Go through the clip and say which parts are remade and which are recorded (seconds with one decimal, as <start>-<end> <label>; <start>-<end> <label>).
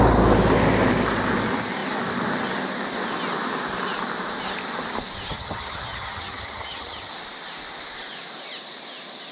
0.0-5.3 recorded; 5.3-7.1 remade; 7.1-9.3 recorded